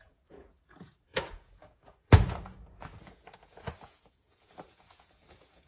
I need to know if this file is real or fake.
fake